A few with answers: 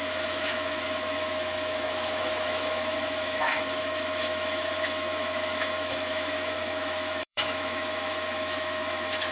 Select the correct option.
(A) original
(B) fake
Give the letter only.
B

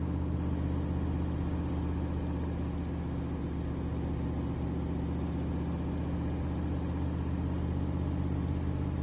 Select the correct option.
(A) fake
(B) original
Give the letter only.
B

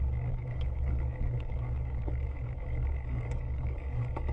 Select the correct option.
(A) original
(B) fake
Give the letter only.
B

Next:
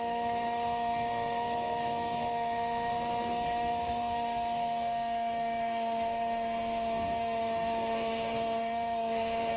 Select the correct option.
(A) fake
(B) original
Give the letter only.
A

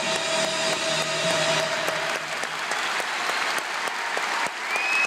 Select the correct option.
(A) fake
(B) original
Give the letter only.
B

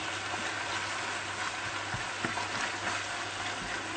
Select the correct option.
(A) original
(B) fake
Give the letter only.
A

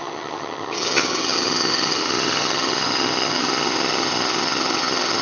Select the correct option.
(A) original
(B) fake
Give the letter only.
B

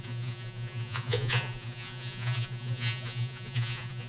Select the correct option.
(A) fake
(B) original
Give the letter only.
A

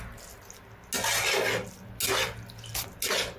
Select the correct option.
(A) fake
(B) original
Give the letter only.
B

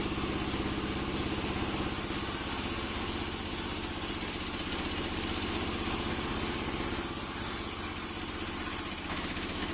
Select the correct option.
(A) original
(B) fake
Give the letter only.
A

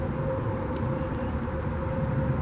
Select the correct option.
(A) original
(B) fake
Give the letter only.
A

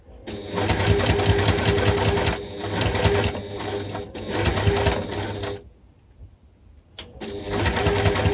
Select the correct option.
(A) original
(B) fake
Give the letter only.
A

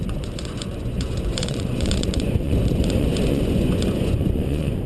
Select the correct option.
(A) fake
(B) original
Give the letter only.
A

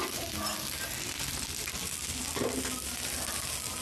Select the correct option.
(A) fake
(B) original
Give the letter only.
B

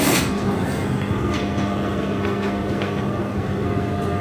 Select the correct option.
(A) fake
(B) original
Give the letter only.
A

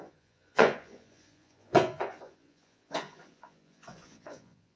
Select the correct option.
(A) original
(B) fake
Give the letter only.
B